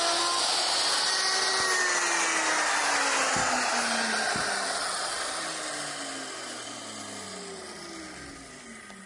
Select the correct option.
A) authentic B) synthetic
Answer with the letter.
A